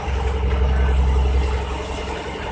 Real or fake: real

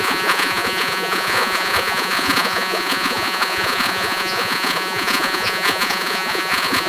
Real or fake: fake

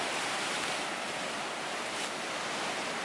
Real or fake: real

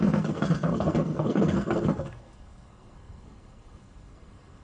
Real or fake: fake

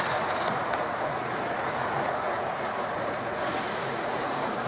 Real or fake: fake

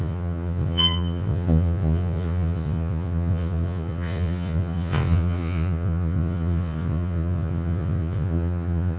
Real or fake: fake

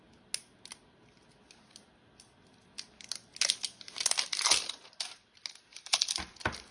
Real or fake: real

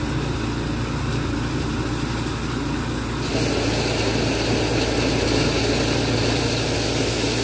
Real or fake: real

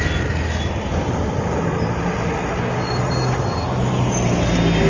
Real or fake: real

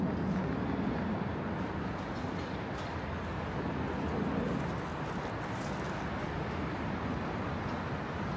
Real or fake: real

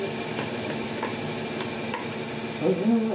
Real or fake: real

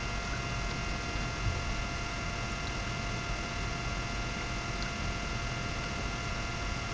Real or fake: real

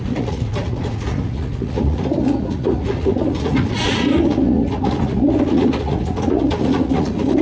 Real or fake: fake